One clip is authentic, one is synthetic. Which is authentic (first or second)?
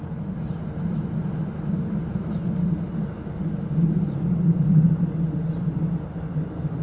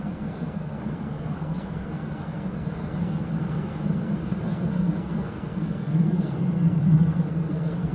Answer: first